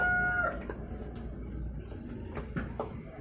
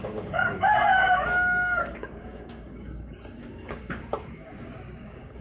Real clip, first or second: first